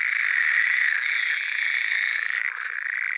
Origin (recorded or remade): recorded